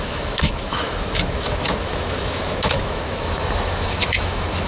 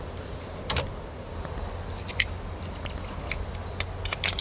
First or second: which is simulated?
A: first